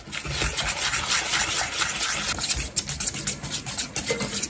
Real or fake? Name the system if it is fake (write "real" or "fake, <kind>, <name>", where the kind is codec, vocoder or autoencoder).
real